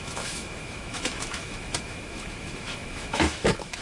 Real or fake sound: fake